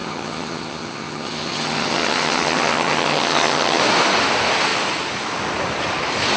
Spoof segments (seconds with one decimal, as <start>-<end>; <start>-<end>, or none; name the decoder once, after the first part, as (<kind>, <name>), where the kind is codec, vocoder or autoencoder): 0.0-3.8 (vocoder, HiFi-GAN)